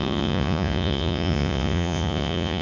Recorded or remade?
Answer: remade